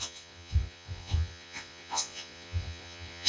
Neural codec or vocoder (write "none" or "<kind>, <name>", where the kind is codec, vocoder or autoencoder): vocoder, Vocos